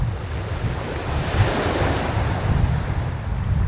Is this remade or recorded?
recorded